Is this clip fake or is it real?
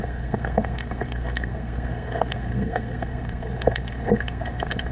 fake